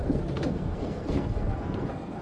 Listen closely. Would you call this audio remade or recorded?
remade